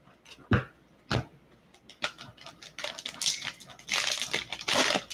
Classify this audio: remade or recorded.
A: recorded